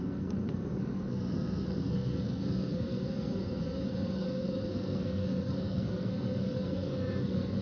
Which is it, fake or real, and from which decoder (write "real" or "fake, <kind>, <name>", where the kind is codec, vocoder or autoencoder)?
fake, codec, SNAC